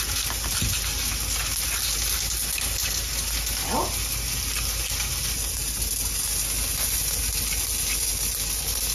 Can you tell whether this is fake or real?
real